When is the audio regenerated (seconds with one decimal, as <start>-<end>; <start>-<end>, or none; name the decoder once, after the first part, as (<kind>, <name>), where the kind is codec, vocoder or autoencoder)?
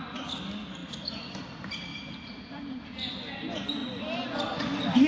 1.9-3.1 (vocoder, Vocos)